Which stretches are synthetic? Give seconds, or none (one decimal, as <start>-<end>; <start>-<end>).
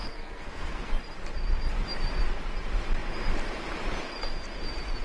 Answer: 0.0-0.9